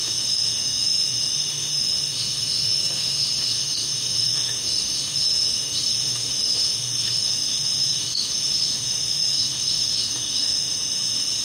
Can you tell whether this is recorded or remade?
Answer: remade